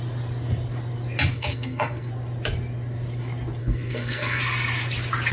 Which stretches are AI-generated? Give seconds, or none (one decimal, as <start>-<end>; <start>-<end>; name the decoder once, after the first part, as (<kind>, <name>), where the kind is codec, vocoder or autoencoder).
1.3-2.1 (codec, SNAC); 3.6-4.4